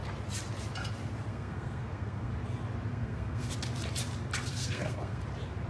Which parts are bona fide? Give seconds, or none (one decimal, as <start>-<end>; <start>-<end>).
0.0-1.3; 2.3-2.9; 3.5-4.5; 5.2-5.7